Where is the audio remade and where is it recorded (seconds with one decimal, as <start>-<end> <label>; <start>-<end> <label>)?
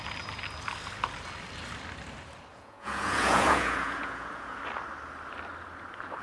0.0-2.5 recorded; 2.5-4.6 remade; 4.6-6.2 recorded